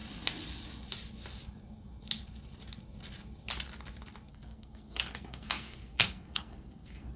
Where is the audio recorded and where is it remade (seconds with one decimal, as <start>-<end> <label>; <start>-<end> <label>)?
0.0-4.3 recorded; 4.3-7.2 remade